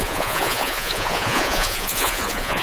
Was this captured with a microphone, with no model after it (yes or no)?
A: no